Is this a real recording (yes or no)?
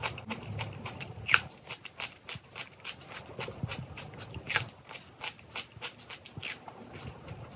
yes